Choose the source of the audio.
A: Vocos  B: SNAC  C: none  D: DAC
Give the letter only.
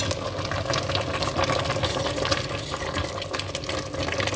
C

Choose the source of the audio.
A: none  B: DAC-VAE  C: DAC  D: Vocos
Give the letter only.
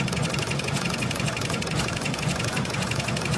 D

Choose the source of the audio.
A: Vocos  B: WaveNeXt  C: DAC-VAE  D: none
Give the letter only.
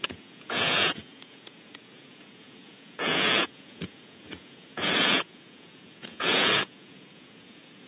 A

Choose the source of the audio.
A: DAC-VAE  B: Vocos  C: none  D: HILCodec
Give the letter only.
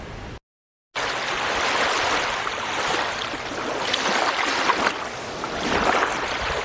C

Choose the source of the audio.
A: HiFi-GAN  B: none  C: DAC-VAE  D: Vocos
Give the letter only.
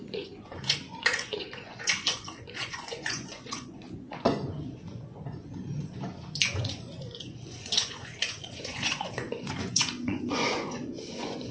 D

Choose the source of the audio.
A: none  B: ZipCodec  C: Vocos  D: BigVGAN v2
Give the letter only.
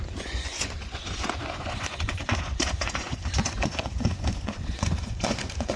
C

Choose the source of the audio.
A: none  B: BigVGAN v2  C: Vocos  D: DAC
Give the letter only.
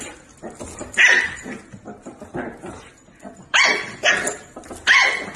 A